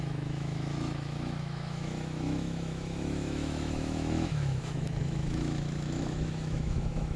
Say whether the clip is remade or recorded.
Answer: remade